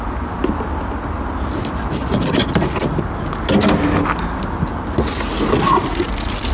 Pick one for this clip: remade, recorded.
recorded